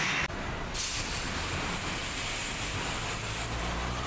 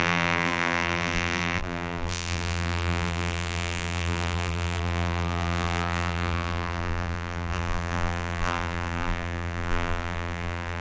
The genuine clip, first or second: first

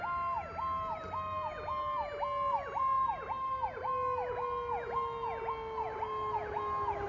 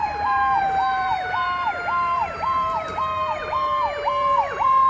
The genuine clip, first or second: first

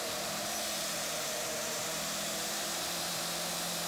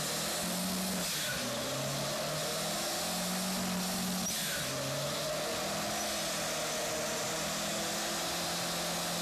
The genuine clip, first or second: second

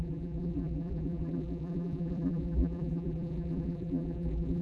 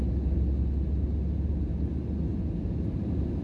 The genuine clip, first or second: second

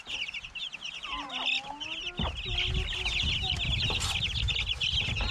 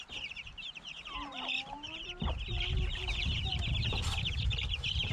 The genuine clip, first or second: first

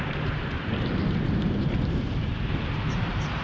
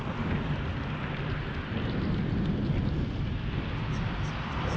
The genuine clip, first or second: second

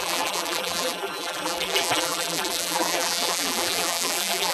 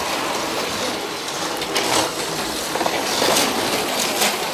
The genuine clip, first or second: second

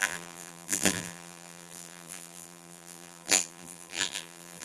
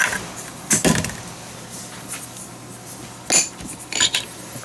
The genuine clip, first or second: second